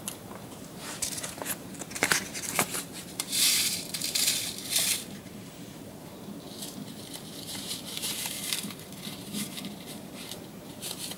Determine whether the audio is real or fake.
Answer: fake